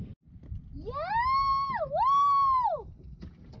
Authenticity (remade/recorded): recorded